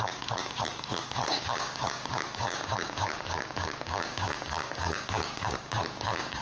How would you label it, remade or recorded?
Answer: remade